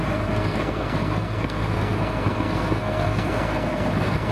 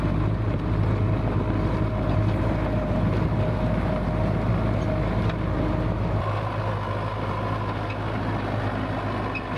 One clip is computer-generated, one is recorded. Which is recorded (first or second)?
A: second